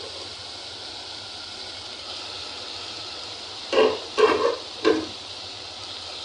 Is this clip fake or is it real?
real